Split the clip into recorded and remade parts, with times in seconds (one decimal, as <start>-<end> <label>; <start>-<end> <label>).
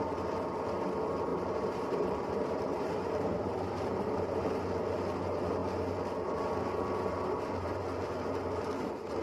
0.0-1.3 recorded; 1.3-4.6 remade; 4.6-9.2 recorded